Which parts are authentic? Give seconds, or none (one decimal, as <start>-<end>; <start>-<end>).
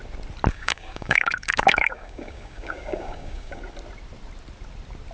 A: 0.0-0.5; 3.6-5.1